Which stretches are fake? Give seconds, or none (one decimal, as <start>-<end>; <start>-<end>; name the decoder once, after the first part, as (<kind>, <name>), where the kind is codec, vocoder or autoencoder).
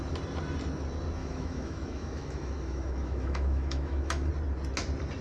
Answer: 1.2-4.3 (autoencoder, DAC-VAE)